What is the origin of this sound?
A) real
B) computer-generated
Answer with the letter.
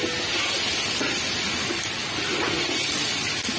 A